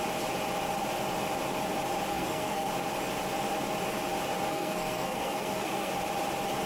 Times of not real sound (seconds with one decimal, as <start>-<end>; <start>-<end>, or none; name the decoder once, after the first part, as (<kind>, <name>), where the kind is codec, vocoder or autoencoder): 2.1-2.7 (codec, SNAC); 4.5-5.9